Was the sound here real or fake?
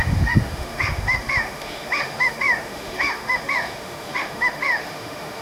fake